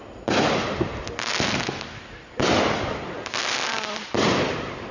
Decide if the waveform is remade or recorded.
recorded